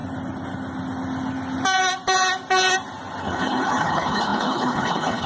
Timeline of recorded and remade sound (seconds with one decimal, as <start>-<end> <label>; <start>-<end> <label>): 0.0-3.2 recorded; 3.2-5.3 remade